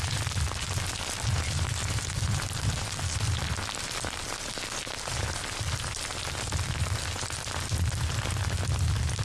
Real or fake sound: real